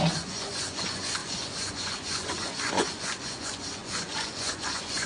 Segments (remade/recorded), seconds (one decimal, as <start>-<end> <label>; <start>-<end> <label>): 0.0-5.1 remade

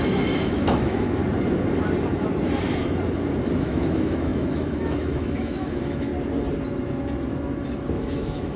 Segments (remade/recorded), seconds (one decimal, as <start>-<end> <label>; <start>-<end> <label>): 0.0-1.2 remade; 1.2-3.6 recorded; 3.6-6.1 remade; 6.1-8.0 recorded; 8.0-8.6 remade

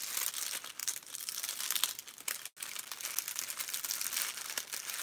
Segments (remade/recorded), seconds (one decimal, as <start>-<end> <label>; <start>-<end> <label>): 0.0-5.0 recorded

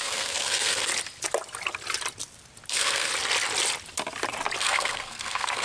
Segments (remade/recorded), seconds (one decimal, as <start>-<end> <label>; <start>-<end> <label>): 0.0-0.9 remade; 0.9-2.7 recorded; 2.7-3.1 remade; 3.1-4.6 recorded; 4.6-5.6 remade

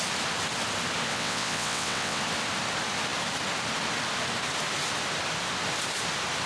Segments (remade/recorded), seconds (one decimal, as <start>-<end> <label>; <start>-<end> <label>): 0.0-1.1 recorded; 1.1-2.2 remade; 2.2-6.5 recorded